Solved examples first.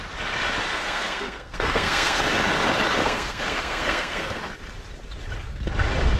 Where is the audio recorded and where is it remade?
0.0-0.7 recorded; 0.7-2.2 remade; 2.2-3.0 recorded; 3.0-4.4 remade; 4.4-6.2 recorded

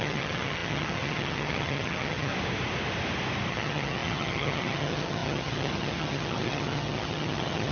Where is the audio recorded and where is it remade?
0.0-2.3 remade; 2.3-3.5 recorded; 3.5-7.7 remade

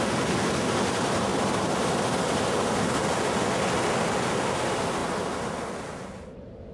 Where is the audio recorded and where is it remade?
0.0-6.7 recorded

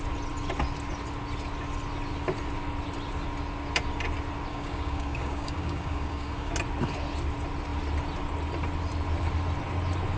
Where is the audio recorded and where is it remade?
0.0-4.5 recorded; 4.5-6.5 remade; 6.5-10.2 recorded